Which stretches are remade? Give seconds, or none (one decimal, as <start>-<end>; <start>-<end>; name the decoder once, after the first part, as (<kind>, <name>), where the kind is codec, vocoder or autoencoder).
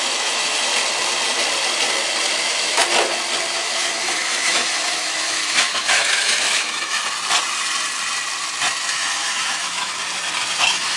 0.0-0.7 (autoencoder, DAC-VAE); 2.4-2.8; 3.5-7.0; 8.9-10.0; 10.6-11.0